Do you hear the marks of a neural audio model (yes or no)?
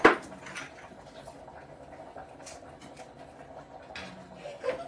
no